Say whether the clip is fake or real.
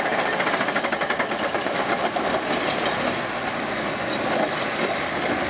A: real